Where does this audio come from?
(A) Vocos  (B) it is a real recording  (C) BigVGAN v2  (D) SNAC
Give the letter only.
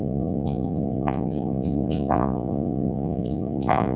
A